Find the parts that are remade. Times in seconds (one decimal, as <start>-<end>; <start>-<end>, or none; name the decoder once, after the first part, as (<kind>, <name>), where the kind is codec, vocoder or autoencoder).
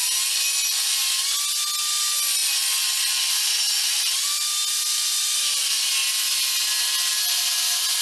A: none